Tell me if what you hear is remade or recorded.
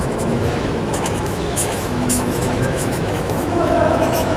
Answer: remade